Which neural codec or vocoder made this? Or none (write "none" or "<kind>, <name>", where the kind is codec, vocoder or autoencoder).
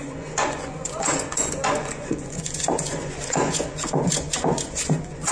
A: vocoder, Vocos